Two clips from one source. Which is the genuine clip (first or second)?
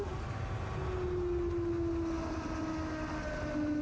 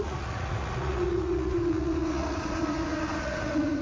first